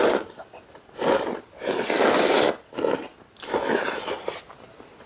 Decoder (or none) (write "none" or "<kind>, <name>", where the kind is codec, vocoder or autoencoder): none